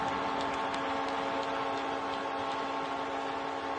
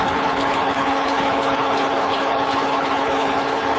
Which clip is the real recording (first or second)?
first